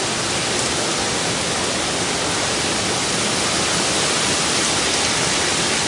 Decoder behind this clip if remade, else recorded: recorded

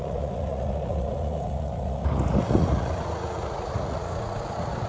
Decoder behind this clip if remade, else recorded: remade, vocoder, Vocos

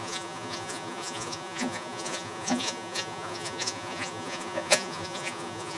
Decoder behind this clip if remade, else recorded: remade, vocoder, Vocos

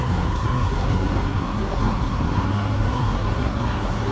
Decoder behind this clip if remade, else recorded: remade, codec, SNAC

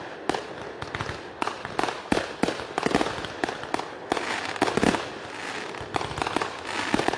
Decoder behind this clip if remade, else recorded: recorded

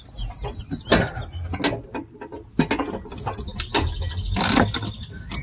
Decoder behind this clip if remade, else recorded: recorded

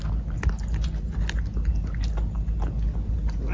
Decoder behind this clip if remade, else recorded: recorded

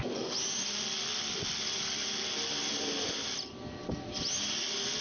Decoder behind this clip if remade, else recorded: recorded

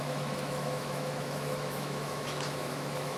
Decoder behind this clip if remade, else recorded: remade, autoencoder, DAC-VAE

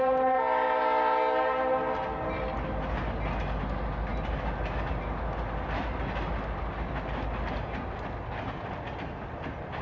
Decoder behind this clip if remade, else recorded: recorded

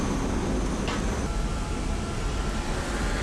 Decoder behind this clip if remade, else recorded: recorded